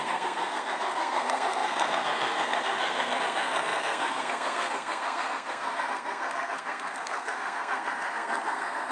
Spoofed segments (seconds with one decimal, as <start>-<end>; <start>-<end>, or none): 0.0-8.9